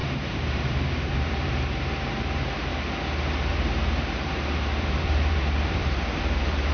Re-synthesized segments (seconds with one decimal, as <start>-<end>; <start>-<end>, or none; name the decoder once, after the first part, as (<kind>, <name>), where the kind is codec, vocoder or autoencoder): 0.0-2.7 (vocoder, BigVGAN v2); 3.5-6.7